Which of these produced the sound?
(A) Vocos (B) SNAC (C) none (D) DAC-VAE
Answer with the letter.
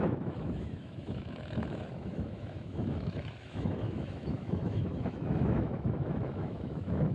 D